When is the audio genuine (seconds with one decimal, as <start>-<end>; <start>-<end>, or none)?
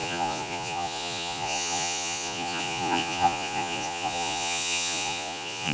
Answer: none